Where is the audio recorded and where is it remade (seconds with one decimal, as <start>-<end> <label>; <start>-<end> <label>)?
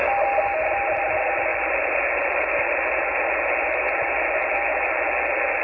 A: 0.0-5.6 recorded